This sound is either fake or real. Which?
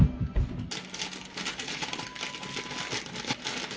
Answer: real